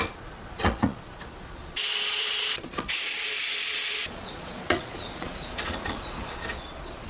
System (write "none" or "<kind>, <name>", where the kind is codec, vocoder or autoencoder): vocoder, Vocos